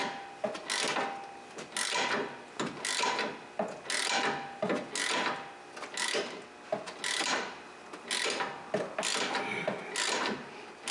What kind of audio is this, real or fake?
real